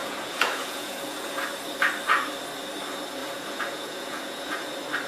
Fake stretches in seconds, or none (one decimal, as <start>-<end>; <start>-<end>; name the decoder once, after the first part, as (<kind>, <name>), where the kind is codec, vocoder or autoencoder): 0.0-1.4 (vocoder, Vocos); 3.2-4.6